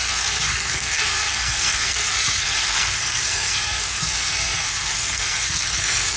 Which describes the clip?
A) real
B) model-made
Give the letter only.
B